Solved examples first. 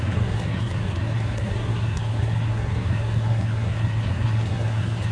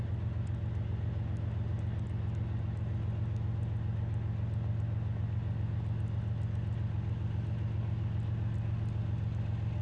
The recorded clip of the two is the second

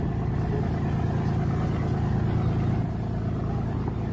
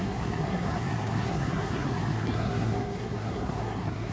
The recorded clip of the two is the first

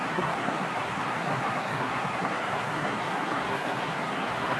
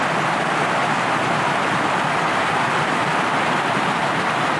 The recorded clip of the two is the second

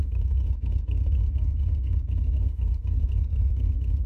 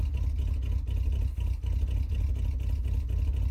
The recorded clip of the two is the second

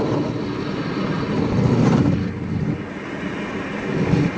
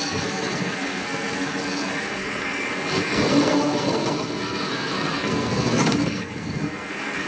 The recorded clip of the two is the first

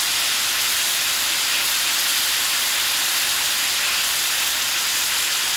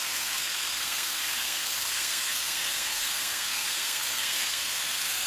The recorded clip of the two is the first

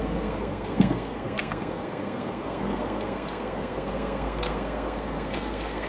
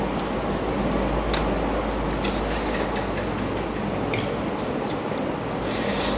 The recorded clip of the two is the second